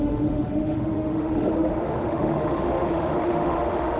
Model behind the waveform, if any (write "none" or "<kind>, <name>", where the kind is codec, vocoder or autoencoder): autoencoder, DAC-VAE